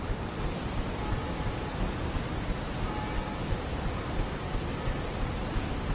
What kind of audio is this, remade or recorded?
recorded